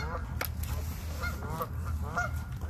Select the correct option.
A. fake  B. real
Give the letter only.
B